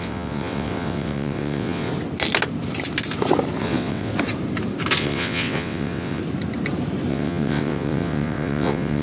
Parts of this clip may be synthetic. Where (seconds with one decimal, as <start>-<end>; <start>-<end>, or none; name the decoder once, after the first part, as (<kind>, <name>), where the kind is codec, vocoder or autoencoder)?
0.0-1.9 (vocoder, WaveNeXt); 3.6-4.1; 5.0-6.2; 7.1-9.0